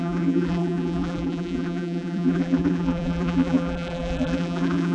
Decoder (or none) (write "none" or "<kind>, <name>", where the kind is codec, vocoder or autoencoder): vocoder, BigVGAN v2